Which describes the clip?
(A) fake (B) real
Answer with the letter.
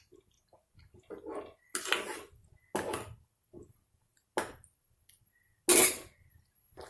B